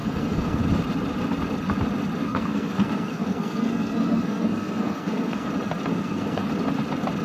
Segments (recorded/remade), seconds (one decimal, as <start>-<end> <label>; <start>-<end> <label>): 0.0-0.6 remade; 0.6-2.2 recorded; 2.2-5.5 remade; 5.5-5.9 recorded; 5.9-6.5 remade; 6.5-7.2 recorded